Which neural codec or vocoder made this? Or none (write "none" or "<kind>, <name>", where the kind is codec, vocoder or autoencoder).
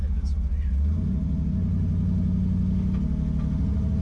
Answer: none